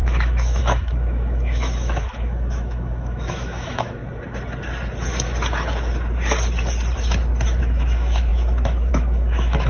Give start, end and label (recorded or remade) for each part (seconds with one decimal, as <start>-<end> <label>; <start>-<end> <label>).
0.0-4.0 remade; 4.0-7.6 recorded; 7.6-9.7 remade